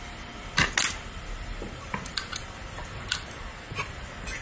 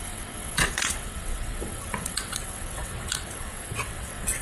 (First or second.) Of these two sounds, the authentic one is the first